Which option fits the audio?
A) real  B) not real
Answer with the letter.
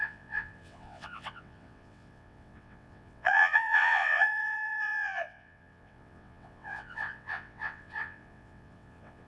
B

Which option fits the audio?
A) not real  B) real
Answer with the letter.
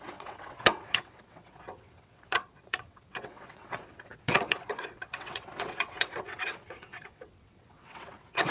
A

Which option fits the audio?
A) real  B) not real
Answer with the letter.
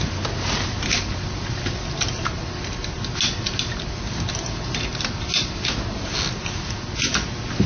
A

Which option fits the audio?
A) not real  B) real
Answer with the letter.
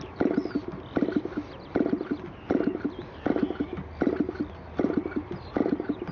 B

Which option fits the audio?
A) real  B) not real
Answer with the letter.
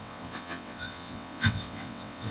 B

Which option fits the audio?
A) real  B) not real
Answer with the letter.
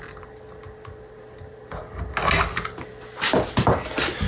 A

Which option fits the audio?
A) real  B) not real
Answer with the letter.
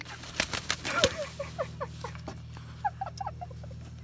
A